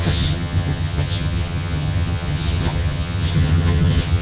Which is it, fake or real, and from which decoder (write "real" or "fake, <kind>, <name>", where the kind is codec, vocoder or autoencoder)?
fake, vocoder, HiFi-GAN